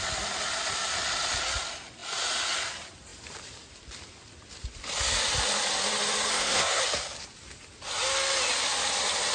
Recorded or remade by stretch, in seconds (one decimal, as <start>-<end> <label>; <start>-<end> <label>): 0.0-6.3 recorded; 6.3-6.8 remade; 6.8-9.3 recorded